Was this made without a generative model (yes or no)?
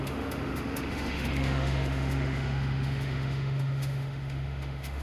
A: no